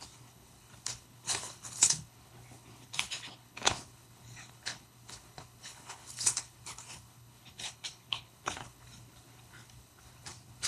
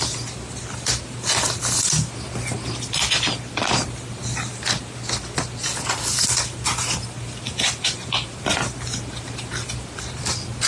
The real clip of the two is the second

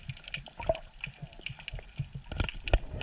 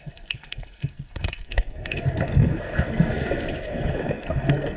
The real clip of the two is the first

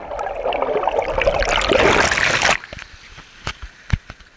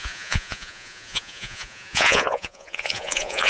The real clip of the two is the first